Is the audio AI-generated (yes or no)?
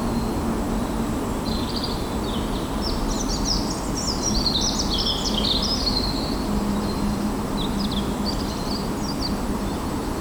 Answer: no